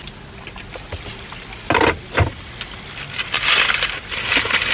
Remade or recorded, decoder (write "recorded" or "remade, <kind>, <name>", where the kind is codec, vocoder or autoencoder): recorded